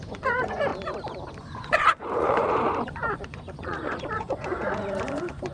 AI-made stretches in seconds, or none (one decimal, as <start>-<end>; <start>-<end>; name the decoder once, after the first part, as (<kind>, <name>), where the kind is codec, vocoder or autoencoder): 0.0-0.7 (vocoder, Vocos); 1.4-5.5